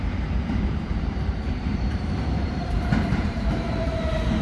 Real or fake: fake